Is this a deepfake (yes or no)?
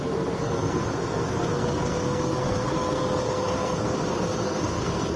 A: yes